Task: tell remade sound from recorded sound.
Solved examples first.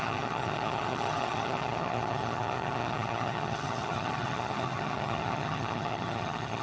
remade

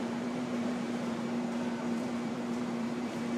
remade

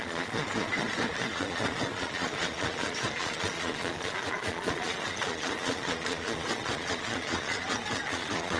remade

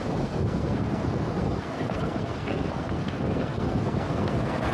remade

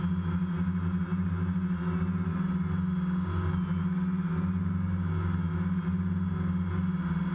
recorded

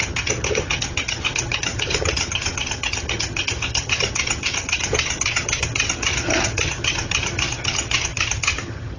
remade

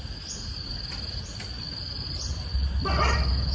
recorded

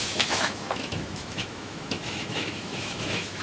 remade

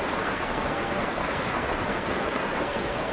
remade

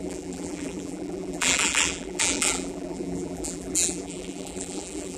remade